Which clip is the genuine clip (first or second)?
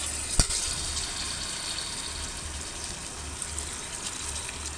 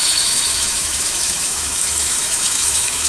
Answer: first